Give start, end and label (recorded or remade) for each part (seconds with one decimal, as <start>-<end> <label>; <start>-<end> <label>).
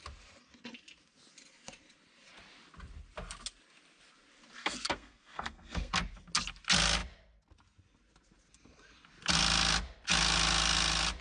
0.0-4.6 recorded; 4.6-6.0 remade; 6.0-11.2 recorded